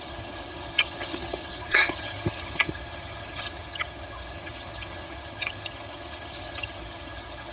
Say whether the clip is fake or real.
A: fake